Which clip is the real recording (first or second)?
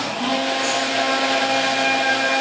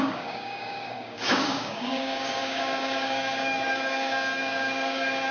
first